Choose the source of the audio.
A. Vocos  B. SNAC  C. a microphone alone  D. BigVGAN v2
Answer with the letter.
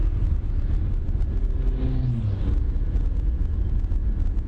C